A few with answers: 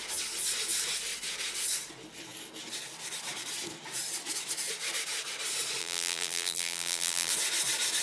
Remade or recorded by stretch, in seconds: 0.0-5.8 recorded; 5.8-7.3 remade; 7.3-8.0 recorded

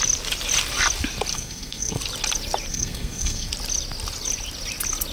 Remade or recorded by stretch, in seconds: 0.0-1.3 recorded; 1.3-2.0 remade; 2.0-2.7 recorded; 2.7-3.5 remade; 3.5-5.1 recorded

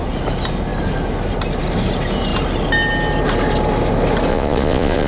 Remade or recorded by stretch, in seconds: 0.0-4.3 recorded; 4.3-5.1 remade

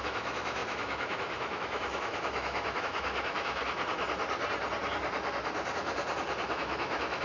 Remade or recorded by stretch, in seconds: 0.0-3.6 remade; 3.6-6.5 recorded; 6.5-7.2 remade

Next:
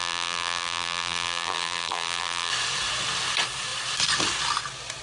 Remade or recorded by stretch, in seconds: 0.0-2.5 remade; 2.5-5.0 recorded

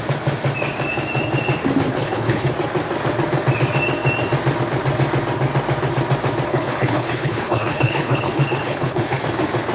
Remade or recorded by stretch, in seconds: 0.0-1.9 recorded; 1.9-2.5 remade; 2.5-6.5 recorded; 6.5-9.2 remade; 9.2-9.7 recorded

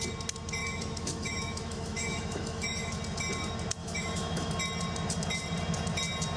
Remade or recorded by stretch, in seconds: 0.0-0.6 recorded; 0.6-3.0 remade; 3.0-3.8 recorded; 3.8-4.5 remade; 4.5-6.4 recorded